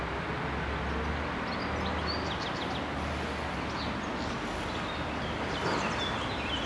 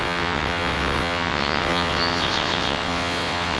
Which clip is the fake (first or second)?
second